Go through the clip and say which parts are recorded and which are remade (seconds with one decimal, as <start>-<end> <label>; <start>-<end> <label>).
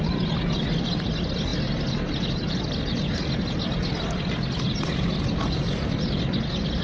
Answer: 0.0-6.8 recorded